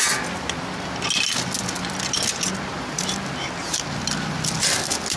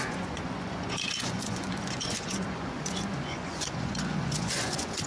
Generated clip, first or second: second